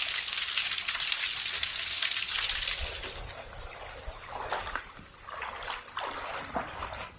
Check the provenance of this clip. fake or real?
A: real